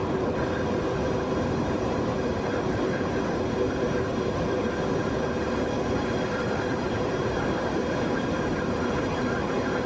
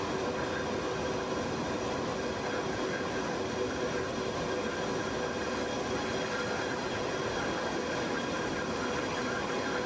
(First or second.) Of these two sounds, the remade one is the first